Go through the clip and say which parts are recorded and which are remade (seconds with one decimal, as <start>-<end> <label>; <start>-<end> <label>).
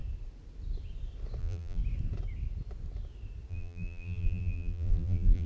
0.0-1.4 recorded; 1.4-1.8 remade; 1.8-3.5 recorded; 3.5-5.5 remade